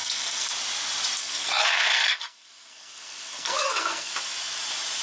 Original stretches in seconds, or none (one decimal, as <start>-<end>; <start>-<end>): 0.5-1.2; 4.1-5.0